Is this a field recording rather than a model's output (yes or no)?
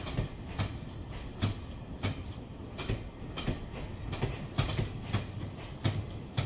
yes